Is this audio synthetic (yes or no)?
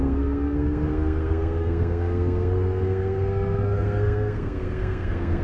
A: yes